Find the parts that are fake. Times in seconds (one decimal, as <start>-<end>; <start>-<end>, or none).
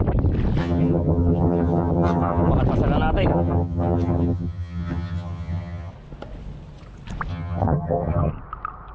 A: 0.6-2.5; 3.3-5.9; 7.3-8.3